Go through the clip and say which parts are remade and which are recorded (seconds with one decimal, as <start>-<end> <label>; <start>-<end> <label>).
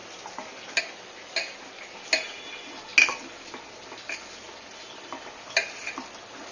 0.0-6.5 recorded